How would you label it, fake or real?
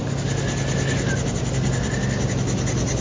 real